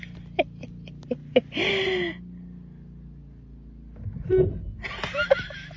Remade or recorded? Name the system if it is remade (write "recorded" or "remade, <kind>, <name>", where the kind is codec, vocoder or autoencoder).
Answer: recorded